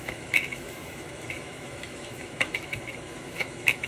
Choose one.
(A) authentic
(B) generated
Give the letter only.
B